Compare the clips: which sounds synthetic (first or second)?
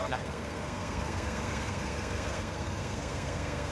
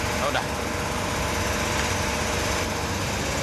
first